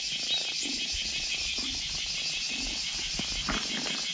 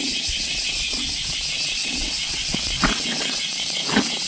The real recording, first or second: first